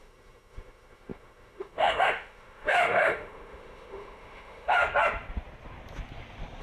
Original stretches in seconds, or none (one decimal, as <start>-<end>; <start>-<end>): 4.8-6.6